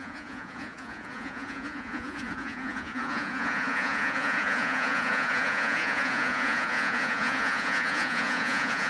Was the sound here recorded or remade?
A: remade